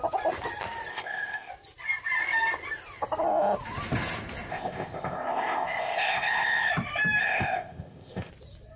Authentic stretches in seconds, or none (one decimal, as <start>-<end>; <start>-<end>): 0.0-0.9; 1.5-4.5; 6.7-7.2; 8.3-8.8